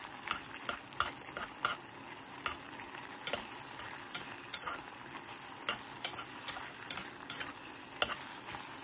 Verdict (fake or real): real